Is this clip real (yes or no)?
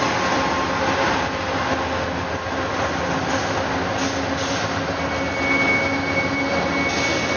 yes